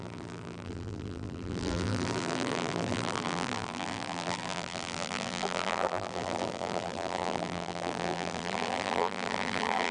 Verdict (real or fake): fake